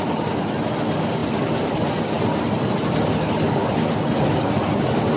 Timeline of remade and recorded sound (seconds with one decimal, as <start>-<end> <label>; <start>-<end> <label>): 0.0-1.2 recorded; 1.2-2.0 remade; 2.0-5.2 recorded